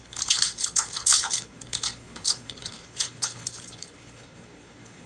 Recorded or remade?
remade